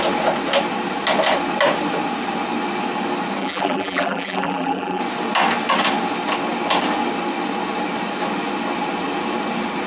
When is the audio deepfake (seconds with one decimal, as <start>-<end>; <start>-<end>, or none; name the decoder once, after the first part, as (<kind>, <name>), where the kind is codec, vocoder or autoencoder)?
3.4-5.0 (vocoder, BigVGAN v2)